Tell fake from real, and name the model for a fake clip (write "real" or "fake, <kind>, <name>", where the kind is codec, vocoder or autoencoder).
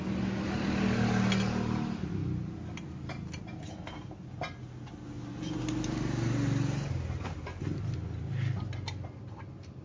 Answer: real